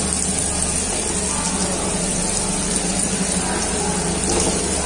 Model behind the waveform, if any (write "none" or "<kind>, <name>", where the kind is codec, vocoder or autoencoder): none